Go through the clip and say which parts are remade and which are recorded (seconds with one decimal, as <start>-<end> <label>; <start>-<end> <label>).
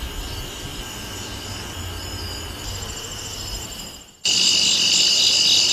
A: 0.0-5.7 recorded